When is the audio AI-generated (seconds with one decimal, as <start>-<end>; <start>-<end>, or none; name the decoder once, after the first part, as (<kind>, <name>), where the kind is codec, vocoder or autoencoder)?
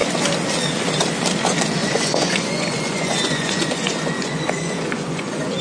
1.8-5.6 (vocoder, Vocos)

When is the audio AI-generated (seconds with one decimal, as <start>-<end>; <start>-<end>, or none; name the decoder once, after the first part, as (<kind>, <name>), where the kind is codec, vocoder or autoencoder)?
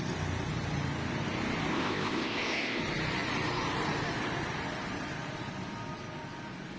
1.7-2.8 (codec, ZipCodec)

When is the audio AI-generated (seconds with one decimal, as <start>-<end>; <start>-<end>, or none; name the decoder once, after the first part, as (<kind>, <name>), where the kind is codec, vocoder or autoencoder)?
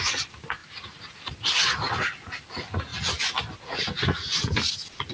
0.6-1.1 (vocoder, BigVGAN v2)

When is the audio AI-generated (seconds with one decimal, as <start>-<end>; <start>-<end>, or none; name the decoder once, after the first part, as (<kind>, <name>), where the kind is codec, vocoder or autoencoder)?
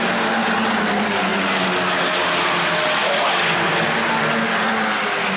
none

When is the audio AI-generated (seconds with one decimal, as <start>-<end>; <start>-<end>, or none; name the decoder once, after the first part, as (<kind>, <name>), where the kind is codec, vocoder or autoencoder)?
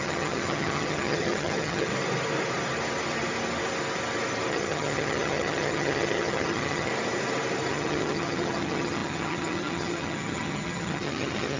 0.0-1.9 (vocoder, HiFi-GAN); 4.5-6.9; 7.7-11.6